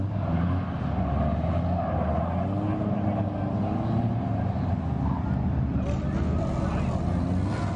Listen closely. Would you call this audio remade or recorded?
recorded